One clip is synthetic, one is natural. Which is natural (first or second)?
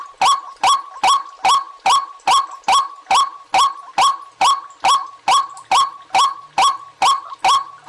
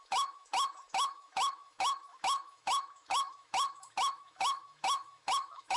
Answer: first